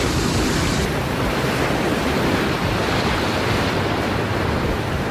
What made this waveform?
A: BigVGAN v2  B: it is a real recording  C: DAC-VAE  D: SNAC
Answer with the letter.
A